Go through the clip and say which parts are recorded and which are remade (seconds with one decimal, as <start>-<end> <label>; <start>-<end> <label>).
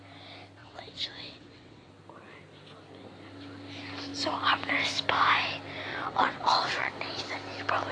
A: 0.0-0.6 recorded; 0.6-1.9 remade; 1.9-5.9 recorded; 5.9-6.9 remade; 6.9-7.9 recorded